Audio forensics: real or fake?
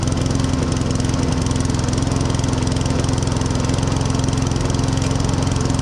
real